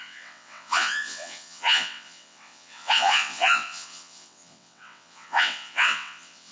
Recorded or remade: remade